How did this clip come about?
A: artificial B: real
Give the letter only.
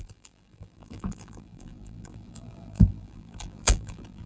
A